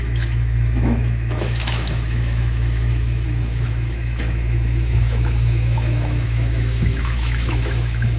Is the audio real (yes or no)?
no